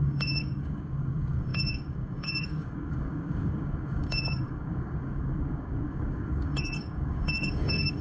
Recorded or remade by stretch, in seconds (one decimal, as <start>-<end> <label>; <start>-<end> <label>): 0.0-8.0 remade